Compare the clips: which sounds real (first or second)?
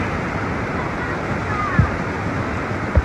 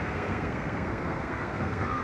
first